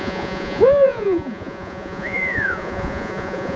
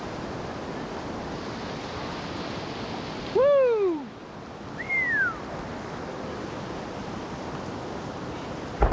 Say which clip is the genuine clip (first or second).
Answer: second